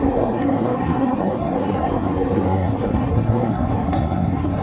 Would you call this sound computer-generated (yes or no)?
yes